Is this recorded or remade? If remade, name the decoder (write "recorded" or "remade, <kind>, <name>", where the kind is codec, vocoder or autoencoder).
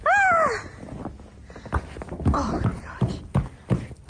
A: recorded